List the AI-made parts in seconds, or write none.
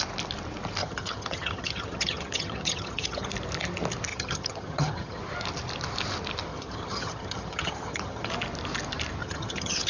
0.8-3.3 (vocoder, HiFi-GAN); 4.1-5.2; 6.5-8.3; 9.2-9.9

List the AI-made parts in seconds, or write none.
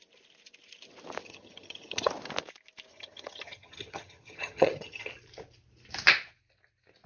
1.2-2.1 (vocoder, HiFi-GAN); 2.9-5.1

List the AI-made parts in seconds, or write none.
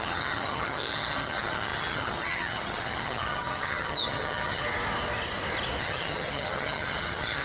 0.0-4.6 (vocoder, HiFi-GAN); 5.8-7.4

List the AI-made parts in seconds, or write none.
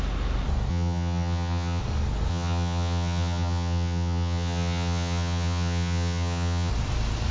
0.7-1.8 (vocoder, HiFi-GAN); 2.3-6.7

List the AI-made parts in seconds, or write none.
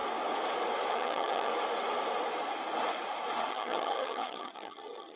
0.9-1.5 (vocoder, HiFi-GAN); 3.5-5.2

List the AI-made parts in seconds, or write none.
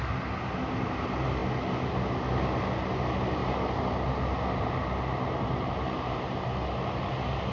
none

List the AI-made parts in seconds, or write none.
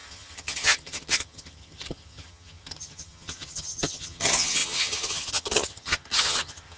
0.0-6.8 (vocoder, HiFi-GAN)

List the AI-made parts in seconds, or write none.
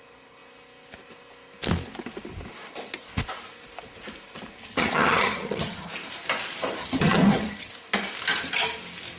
4.6-5.9 (vocoder, HiFi-GAN); 6.8-7.7